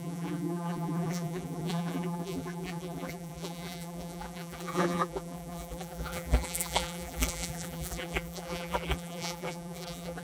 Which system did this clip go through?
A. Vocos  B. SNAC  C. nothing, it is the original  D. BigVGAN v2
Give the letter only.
D